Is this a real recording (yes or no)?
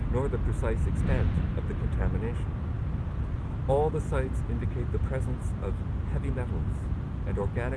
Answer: yes